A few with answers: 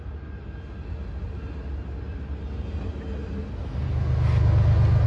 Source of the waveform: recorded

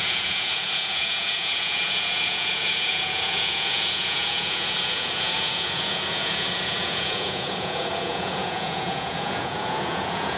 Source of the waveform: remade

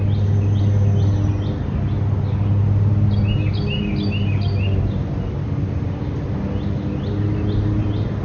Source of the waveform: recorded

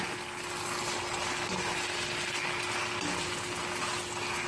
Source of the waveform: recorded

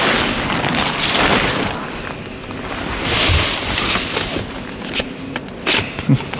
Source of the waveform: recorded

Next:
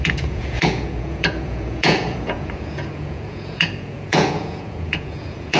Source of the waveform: remade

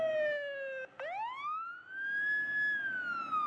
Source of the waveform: recorded